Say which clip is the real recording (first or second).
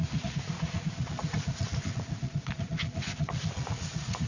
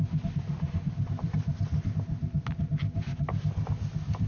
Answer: second